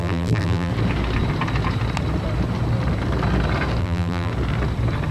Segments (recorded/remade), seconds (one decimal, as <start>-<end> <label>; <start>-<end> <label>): 0.0-0.7 remade; 0.7-3.8 recorded; 3.8-4.3 remade; 4.3-5.1 recorded